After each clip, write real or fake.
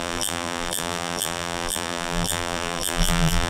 fake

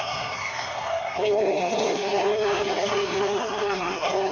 fake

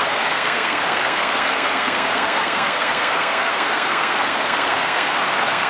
fake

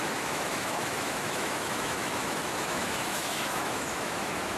fake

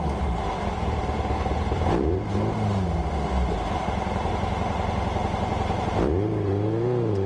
fake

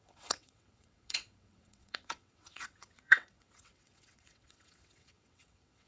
fake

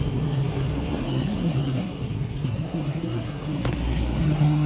fake